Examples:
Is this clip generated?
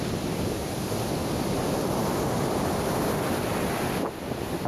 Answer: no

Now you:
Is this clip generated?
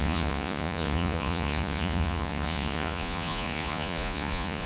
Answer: yes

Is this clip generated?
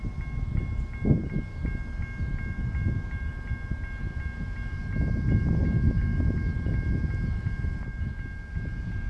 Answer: no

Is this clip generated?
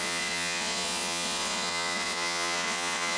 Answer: yes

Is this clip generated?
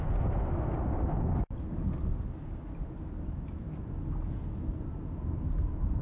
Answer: no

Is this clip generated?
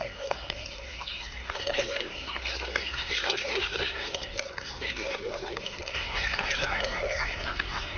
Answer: yes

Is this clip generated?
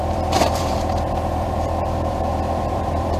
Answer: yes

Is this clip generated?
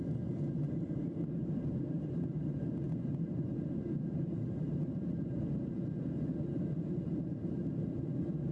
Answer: yes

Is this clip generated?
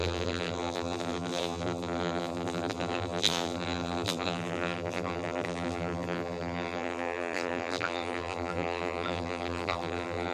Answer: yes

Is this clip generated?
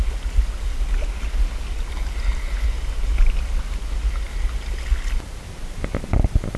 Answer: no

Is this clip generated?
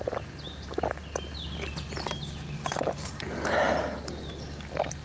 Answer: no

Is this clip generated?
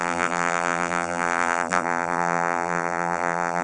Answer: yes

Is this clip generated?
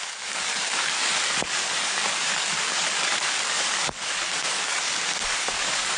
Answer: yes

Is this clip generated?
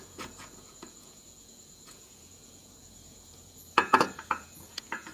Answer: yes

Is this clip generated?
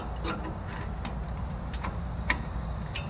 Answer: no